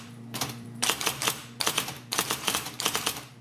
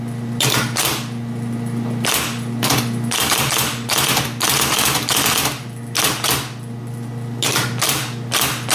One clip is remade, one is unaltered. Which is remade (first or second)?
first